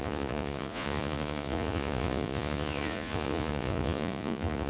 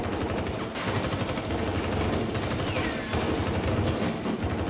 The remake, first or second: first